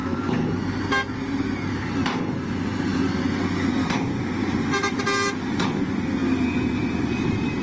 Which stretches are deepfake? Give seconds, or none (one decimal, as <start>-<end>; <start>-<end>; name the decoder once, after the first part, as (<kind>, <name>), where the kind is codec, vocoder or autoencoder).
0.0-0.8 (vocoder, BigVGAN v2); 4.4-5.0; 6.2-7.6